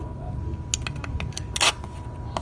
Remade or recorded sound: recorded